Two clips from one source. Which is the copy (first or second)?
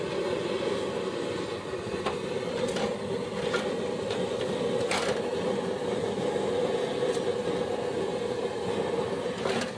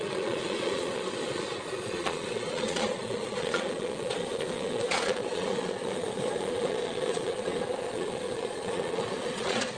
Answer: second